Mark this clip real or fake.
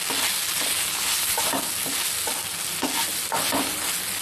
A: real